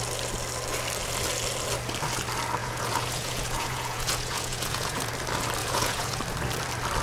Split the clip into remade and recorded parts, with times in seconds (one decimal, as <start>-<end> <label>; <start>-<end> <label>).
0.0-2.6 recorded; 2.6-5.1 remade; 5.1-5.6 recorded; 5.6-6.2 remade; 6.2-7.0 recorded